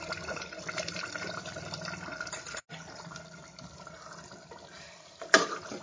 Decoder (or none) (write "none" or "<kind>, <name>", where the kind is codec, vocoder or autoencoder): none